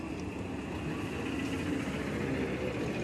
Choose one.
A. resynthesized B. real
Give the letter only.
B